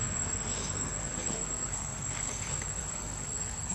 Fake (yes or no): yes